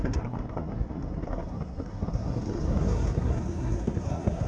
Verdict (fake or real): fake